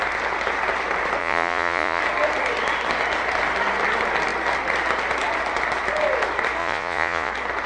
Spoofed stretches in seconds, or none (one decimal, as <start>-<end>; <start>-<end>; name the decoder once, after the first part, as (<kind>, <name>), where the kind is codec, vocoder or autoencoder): 1.2-2.0 (vocoder, Vocos); 6.6-7.3